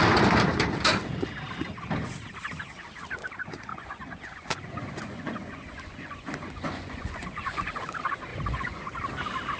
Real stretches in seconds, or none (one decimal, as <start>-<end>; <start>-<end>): 0.0-3.7; 7.9-8.3; 8.8-9.6